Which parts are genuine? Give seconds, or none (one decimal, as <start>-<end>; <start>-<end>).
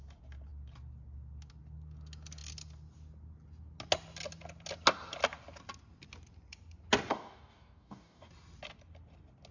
0.0-7.1; 8.3-9.5